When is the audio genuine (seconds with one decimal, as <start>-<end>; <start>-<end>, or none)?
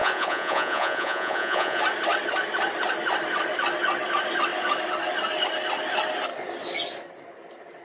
1.8-7.8